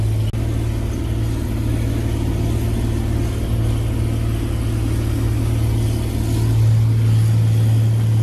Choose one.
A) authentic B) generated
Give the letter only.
A